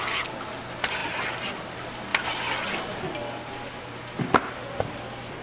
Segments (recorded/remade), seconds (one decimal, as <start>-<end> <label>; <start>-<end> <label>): 0.0-5.4 recorded